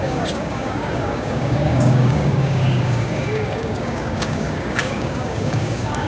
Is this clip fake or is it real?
fake